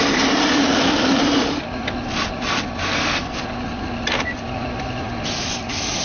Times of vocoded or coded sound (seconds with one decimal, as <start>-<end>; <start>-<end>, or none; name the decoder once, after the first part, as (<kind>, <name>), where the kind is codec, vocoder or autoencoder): 2.9-3.4 (codec, SNAC)